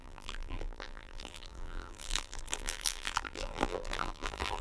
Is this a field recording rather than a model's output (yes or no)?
no